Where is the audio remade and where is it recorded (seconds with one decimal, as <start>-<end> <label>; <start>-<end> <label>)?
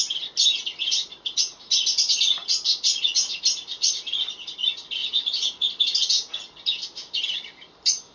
0.0-5.0 recorded; 5.0-5.8 remade; 5.8-8.1 recorded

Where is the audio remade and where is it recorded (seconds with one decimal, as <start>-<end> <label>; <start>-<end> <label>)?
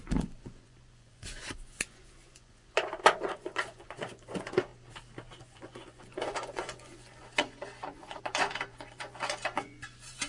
0.0-4.7 remade; 4.7-5.4 recorded; 5.4-10.3 remade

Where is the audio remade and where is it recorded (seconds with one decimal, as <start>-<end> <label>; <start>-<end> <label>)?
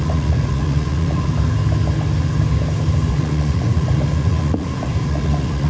0.0-1.3 remade; 1.3-3.1 recorded; 3.1-5.7 remade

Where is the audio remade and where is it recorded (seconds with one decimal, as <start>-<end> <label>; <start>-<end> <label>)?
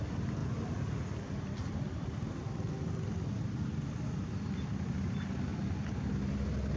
0.0-6.8 recorded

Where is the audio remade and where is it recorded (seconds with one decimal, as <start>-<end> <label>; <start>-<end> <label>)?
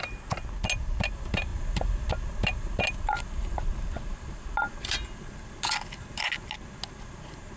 0.0-7.6 recorded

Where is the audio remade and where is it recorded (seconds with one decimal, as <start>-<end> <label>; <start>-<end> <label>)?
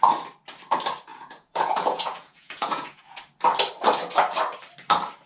0.0-1.1 recorded; 1.1-3.2 remade; 3.2-5.3 recorded